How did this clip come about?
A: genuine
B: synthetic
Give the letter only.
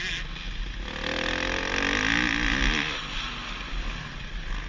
A